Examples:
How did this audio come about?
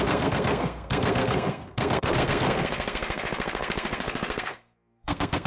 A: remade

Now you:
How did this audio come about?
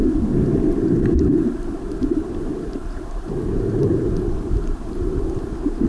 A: remade